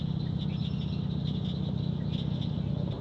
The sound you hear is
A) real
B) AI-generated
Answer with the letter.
A